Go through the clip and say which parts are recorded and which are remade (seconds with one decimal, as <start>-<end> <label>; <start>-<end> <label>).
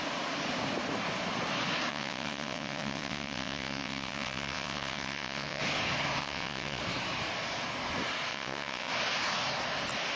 0.0-1.9 recorded; 1.9-5.6 remade; 5.6-6.2 recorded; 6.2-6.8 remade; 6.8-8.3 recorded; 8.3-8.9 remade; 8.9-10.2 recorded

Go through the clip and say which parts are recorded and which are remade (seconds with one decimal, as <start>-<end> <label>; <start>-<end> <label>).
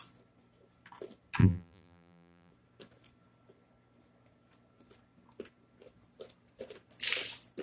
0.0-1.4 recorded; 1.4-2.5 remade; 2.5-7.6 recorded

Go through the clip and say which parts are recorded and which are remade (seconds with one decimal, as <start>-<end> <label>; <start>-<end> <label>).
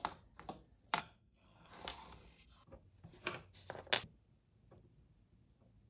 0.0-1.0 recorded; 1.0-1.7 remade; 1.7-5.9 recorded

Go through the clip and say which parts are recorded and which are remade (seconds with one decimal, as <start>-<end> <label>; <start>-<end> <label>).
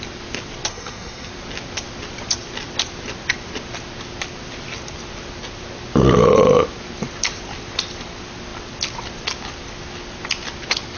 0.0-0.7 recorded; 0.7-1.3 remade; 1.3-11.0 recorded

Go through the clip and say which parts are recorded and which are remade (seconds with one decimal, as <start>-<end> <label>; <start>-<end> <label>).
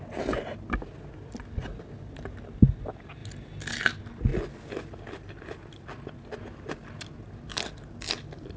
0.0-8.6 recorded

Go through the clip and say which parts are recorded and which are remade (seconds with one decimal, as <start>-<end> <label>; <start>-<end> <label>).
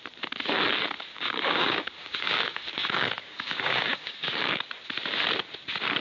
0.0-1.1 recorded; 1.1-4.7 remade; 4.7-6.0 recorded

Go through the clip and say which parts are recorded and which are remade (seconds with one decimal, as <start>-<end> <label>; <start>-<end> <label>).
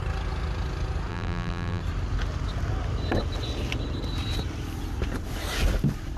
0.0-1.1 recorded; 1.1-1.8 remade; 1.8-6.2 recorded